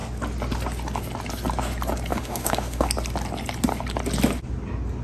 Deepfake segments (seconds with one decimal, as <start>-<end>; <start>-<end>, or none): 2.1-2.9